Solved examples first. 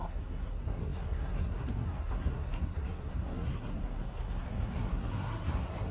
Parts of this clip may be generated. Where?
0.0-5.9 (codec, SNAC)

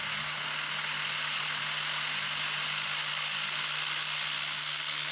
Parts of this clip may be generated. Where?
none